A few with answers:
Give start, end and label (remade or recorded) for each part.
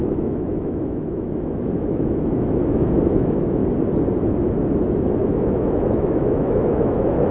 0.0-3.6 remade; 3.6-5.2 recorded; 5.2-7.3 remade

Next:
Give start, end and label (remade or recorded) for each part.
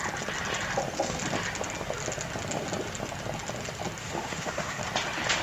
0.0-4.0 recorded; 4.0-4.8 remade; 4.8-5.4 recorded